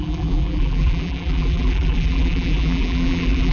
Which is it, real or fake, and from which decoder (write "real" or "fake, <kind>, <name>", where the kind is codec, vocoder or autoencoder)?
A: fake, vocoder, BigVGAN v2